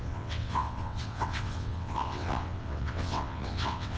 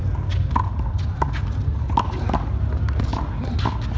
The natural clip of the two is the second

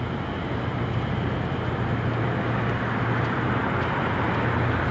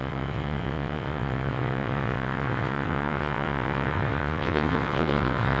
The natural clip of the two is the first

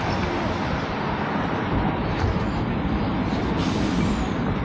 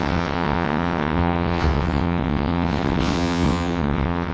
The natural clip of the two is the first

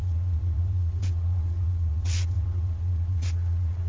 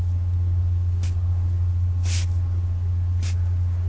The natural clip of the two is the second